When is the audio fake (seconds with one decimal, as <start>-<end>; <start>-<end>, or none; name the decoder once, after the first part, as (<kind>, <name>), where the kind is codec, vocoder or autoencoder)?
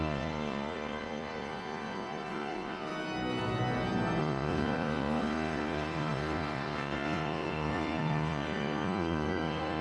0.0-2.9 (vocoder, Vocos); 4.2-9.8